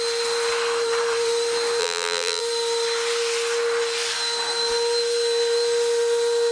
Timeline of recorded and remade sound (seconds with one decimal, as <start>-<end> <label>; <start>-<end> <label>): 0.0-1.8 recorded; 1.8-2.4 remade; 2.4-6.5 recorded